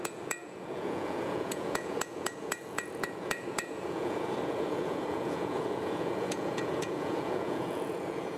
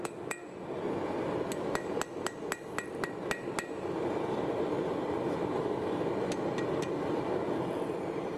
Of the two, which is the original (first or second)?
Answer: second